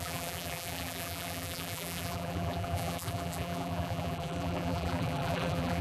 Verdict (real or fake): fake